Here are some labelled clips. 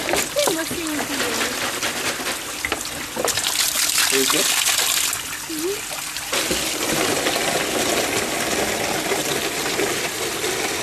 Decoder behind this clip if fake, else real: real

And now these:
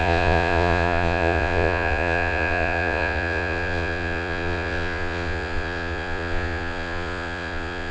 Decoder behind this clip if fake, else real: fake, vocoder, Vocos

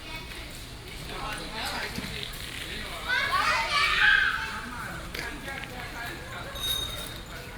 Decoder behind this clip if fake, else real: real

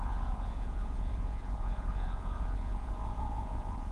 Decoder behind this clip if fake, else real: fake, vocoder, Vocos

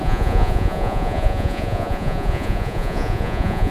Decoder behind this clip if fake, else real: fake, vocoder, Vocos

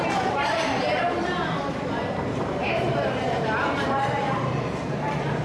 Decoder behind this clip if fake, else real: fake, vocoder, BigVGAN v2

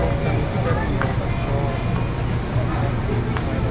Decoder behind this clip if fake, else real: real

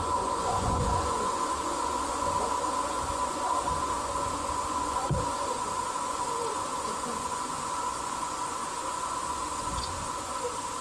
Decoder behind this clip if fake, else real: fake, vocoder, Vocos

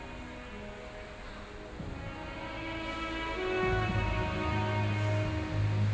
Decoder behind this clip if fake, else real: real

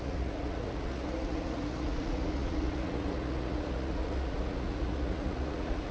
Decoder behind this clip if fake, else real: fake, vocoder, Vocos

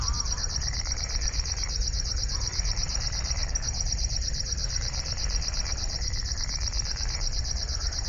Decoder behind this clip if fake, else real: fake, vocoder, BigVGAN v2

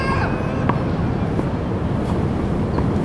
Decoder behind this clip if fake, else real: real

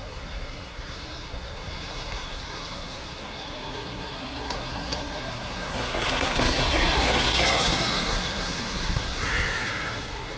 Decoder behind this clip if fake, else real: fake, codec, SNAC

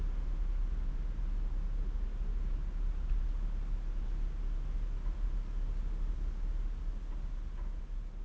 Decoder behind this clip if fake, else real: real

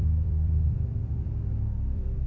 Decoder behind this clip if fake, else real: fake, vocoder, BigVGAN v2